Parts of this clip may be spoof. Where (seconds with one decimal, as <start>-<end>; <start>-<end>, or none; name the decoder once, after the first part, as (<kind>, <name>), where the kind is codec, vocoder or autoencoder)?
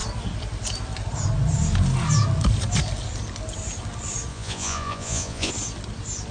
4.3-5.5 (vocoder, Vocos)